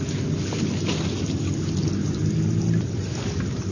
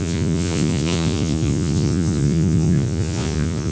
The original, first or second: first